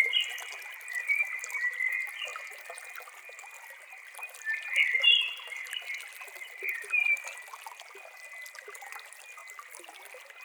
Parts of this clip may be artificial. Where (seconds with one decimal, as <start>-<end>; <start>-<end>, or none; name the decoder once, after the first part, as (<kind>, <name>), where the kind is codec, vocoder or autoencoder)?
none